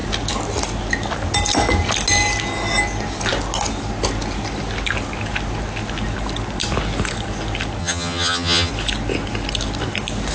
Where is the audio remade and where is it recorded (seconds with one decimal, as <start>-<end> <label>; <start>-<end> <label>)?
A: 0.0-7.8 recorded; 7.8-8.7 remade; 8.7-10.3 recorded

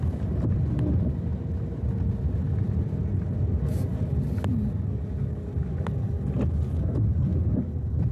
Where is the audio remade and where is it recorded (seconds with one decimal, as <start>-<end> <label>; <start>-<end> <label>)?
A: 0.0-3.0 remade; 3.0-6.8 recorded; 6.8-8.1 remade

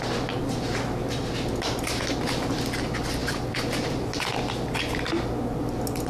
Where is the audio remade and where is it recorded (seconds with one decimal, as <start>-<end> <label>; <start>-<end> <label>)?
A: 0.0-6.1 recorded

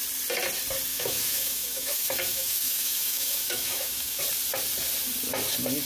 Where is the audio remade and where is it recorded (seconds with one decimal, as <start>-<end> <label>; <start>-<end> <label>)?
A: 0.0-0.9 recorded; 0.9-4.2 remade; 4.2-5.9 recorded